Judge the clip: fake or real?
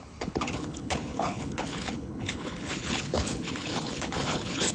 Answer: fake